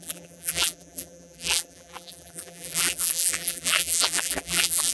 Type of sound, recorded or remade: remade